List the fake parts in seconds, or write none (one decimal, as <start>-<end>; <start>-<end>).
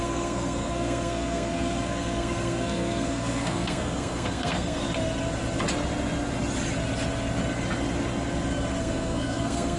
0.0-4.8; 8.8-9.8